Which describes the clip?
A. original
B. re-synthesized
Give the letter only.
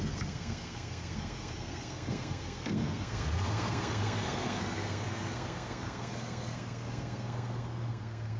B